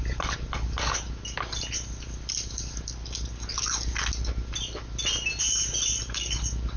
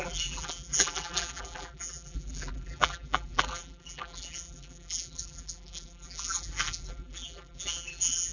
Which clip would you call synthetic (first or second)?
second